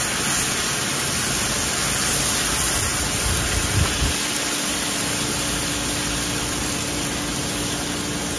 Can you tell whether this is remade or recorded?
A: recorded